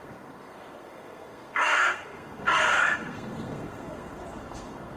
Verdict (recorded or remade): remade